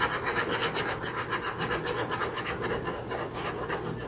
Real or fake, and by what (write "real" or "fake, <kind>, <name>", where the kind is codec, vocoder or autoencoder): real